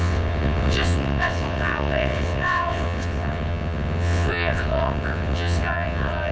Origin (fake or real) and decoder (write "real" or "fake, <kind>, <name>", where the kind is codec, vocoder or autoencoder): fake, vocoder, WaveNeXt